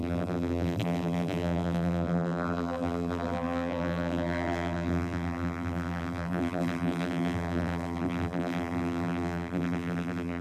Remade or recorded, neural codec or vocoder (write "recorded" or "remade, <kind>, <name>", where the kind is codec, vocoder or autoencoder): remade, vocoder, BigVGAN v2